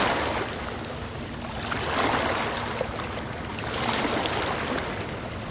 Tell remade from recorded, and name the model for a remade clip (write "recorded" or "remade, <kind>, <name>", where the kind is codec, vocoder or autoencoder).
recorded